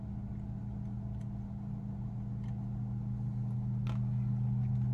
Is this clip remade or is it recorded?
recorded